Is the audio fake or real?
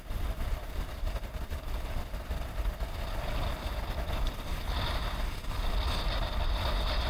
real